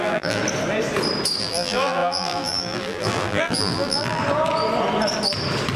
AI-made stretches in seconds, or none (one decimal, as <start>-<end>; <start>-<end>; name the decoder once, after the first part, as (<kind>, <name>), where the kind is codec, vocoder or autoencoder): 0.0-0.4 (vocoder, BigVGAN v2); 1.4-4.2